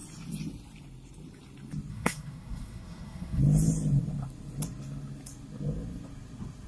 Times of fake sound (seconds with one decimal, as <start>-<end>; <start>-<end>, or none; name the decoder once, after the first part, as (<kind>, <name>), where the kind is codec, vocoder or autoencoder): 1.9-3.4 (codec, SNAC)